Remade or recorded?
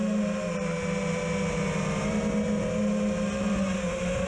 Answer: recorded